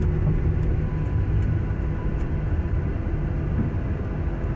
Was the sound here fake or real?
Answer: real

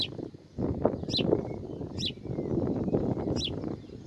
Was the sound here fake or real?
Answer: real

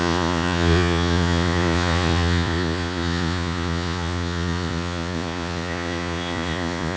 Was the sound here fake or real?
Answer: fake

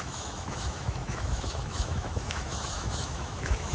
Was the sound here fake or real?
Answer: fake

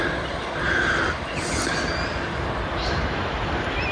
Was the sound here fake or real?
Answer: real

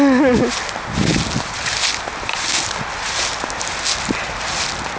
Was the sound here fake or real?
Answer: real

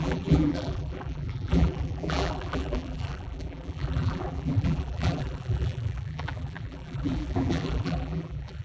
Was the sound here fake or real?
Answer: fake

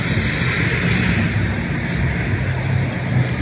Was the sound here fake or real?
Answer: real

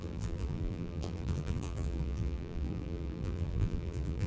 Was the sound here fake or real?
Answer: fake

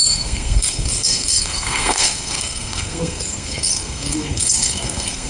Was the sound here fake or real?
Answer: fake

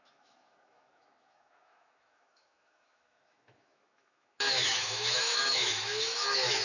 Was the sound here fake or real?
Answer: fake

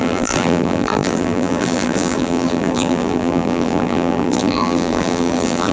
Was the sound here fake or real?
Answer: fake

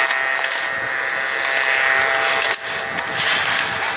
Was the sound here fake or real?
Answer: real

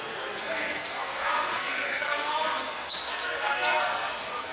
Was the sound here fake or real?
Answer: fake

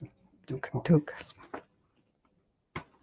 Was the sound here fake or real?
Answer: real